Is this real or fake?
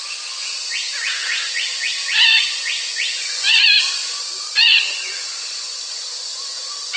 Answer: fake